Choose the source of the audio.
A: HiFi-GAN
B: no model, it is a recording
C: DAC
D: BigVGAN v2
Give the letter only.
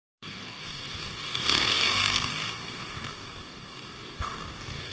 C